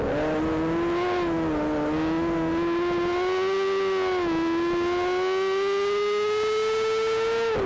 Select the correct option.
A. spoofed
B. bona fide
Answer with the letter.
B